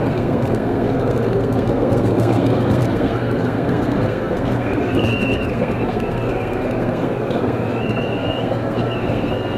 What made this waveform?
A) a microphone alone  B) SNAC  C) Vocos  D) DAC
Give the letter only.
B